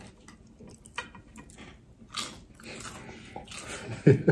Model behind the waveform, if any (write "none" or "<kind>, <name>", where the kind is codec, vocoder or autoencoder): none